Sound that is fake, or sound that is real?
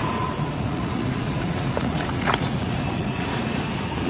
fake